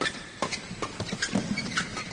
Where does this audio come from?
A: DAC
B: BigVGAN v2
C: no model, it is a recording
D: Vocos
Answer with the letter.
B